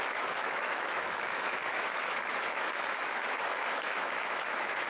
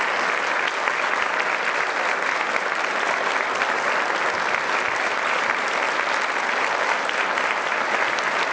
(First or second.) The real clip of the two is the second